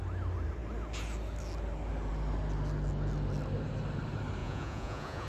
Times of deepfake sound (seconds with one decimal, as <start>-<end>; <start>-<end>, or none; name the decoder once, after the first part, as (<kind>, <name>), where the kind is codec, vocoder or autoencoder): 4.4-5.3 (vocoder, Vocos)